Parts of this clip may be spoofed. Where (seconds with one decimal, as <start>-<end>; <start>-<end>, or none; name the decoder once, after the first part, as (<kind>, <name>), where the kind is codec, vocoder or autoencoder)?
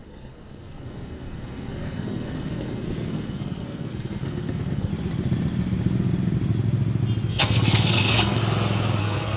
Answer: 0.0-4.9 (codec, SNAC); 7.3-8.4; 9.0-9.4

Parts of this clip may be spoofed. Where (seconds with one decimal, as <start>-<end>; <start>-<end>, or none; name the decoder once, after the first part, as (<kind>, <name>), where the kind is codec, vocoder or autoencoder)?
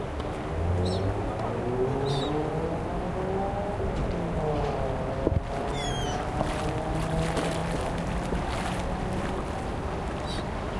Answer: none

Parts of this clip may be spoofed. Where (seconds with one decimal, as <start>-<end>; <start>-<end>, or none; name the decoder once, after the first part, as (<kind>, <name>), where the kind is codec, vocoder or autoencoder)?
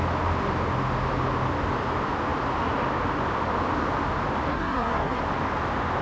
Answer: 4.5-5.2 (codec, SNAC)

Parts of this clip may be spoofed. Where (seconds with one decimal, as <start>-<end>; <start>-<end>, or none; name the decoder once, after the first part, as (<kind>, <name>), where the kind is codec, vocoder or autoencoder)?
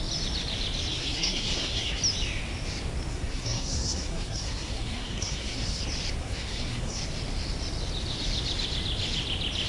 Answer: 0.9-2.0 (codec, SNAC); 3.1-5.8; 6.2-7.0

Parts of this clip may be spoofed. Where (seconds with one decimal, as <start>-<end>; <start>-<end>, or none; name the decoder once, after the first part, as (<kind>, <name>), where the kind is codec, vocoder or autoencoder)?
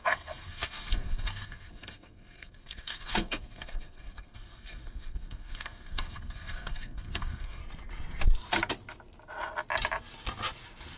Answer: 0.0-7.6 (codec, SNAC)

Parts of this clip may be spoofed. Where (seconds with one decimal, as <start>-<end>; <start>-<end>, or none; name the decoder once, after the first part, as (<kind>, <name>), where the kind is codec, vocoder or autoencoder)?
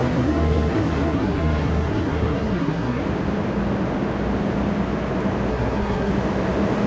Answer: 0.0-3.0 (codec, SNAC); 5.5-6.1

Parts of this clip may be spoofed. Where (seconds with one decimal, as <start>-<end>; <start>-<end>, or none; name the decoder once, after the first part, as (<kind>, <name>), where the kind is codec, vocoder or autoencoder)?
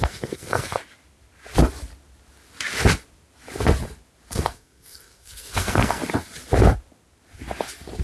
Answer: 0.0-0.8 (codec, SNAC); 4.3-6.0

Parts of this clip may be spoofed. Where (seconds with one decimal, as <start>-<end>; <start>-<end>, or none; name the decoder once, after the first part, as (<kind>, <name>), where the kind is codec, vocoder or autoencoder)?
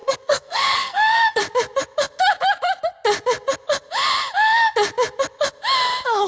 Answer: 0.0-1.4 (codec, SNAC)